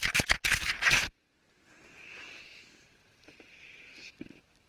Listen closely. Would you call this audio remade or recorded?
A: recorded